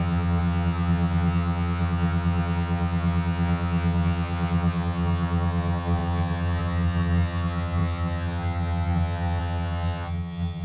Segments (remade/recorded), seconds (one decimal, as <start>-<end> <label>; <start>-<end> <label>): 0.0-10.6 remade